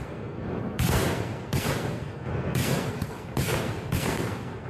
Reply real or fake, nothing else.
fake